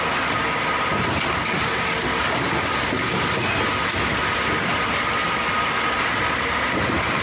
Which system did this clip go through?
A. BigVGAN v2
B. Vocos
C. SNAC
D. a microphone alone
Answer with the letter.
D